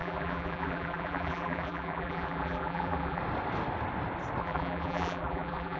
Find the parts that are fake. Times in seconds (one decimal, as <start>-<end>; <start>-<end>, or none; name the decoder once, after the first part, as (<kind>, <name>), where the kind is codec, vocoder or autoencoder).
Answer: 0.0-3.2 (vocoder, BigVGAN v2); 4.4-5.8